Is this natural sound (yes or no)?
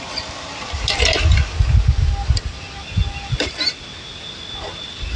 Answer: yes